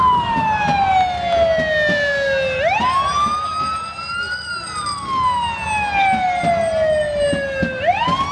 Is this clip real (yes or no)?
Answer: yes